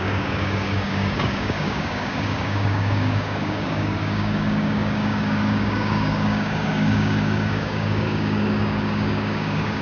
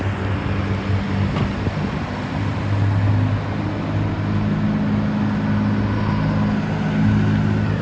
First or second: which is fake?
first